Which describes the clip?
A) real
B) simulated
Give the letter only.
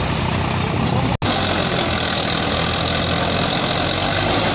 A